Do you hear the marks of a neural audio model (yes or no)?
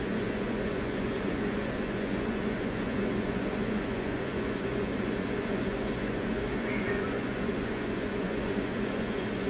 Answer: yes